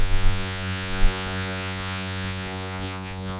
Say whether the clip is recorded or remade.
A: remade